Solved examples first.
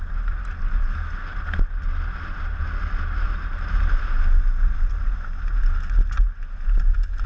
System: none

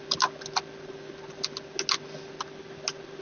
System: none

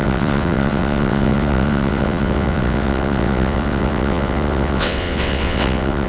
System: vocoder, WaveNeXt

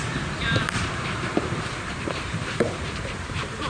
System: vocoder, BigVGAN v2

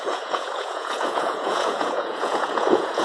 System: vocoder, Vocos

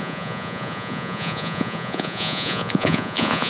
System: vocoder, Vocos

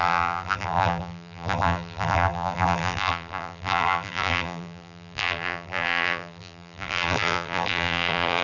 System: vocoder, BigVGAN v2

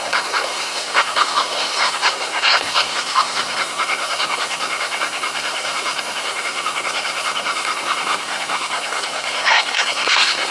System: codec, SNAC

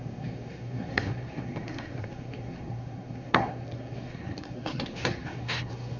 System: codec, SNAC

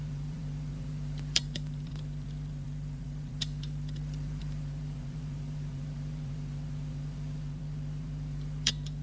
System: vocoder, BigVGAN v2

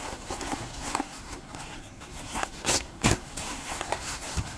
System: codec, SNAC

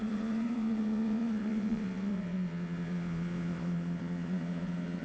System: vocoder, Vocos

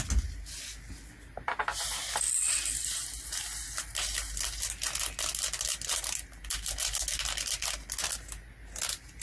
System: none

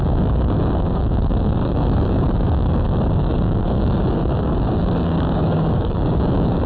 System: codec, DAC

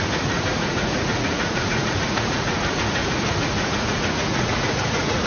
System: vocoder, Vocos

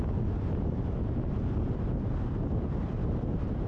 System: none